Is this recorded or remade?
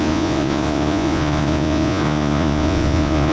remade